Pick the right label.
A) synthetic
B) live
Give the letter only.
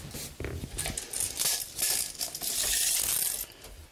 B